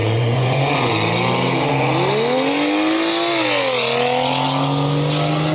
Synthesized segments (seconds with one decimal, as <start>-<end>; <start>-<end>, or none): 0.0-0.9